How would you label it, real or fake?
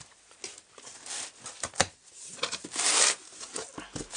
real